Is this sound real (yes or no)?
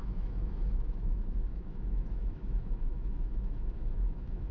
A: no